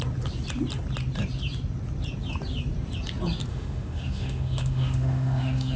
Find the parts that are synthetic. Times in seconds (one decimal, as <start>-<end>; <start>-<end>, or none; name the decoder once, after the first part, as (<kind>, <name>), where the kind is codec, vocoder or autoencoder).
3.5-5.8 (autoencoder, DAC-VAE)